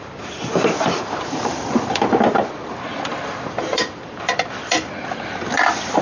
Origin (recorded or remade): remade